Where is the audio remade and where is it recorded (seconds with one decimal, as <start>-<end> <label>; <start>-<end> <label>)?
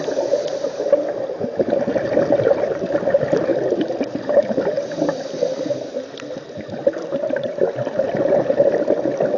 0.0-9.4 recorded